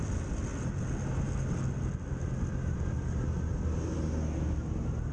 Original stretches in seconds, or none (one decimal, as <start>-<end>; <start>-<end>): 0.0-5.1